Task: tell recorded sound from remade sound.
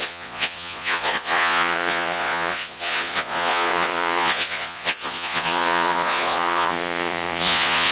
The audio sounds remade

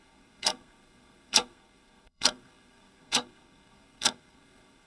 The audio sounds remade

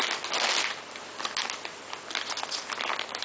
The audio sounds recorded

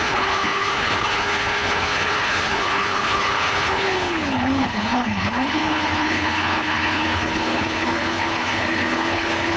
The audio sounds remade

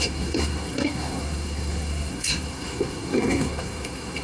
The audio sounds remade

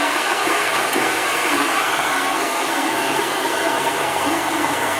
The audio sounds remade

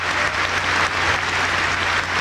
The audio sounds recorded